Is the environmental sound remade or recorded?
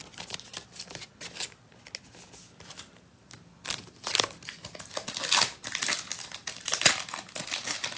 recorded